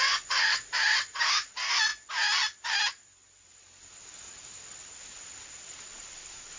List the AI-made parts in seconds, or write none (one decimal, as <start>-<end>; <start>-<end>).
0.0-0.7; 1.3-1.9; 5.9-6.6